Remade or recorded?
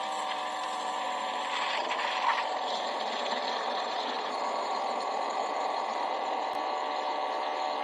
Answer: remade